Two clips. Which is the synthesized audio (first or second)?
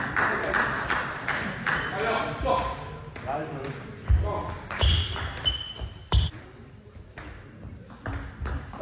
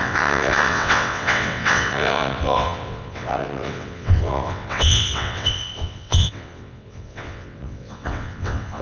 second